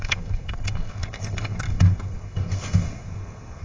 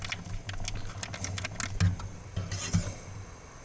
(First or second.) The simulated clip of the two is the first